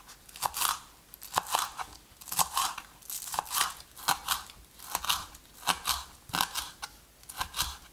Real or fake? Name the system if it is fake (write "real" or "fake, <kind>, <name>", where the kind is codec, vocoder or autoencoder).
real